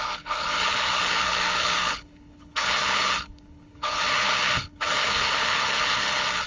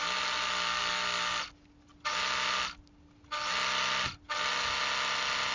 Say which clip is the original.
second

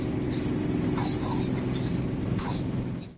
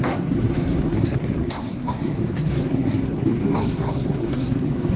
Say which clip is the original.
first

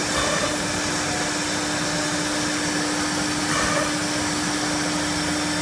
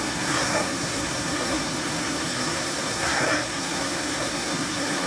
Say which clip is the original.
first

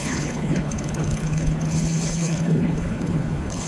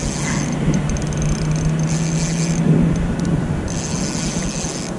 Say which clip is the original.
second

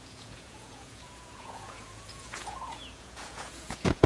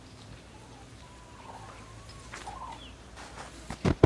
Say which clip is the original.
second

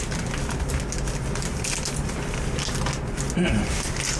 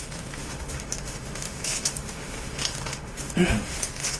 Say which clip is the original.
first